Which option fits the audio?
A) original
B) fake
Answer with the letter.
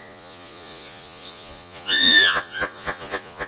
B